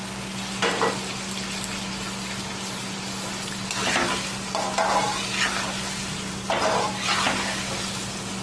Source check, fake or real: real